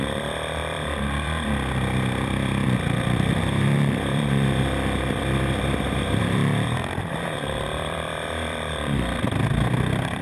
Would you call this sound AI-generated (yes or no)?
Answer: yes